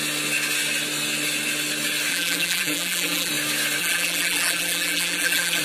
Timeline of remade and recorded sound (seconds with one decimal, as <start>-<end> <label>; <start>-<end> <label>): 0.0-2.1 recorded; 2.1-3.3 remade; 3.3-3.8 recorded; 3.8-5.6 remade